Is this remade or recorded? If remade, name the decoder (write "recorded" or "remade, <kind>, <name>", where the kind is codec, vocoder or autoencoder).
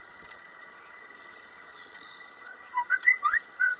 remade, vocoder, HiFi-GAN